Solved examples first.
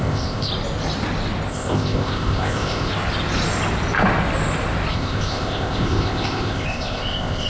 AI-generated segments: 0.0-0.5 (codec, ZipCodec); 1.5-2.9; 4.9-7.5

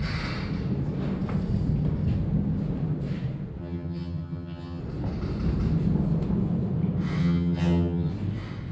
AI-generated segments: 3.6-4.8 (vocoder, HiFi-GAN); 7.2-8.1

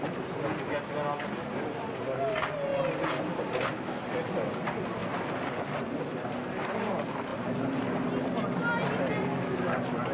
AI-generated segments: none